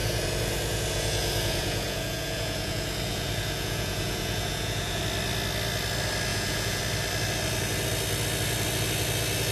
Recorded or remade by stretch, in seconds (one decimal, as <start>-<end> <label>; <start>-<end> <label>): 0.0-5.0 remade; 5.0-6.3 recorded; 6.3-6.8 remade; 6.8-9.5 recorded